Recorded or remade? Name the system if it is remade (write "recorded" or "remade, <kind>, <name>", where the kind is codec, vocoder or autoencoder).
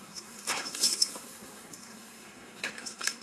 remade, codec, SNAC